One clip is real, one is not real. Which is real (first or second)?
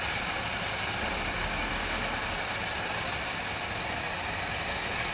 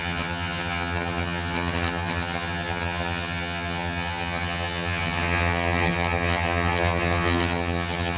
first